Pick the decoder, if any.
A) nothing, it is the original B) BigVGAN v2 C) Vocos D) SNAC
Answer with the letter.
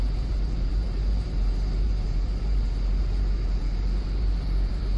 B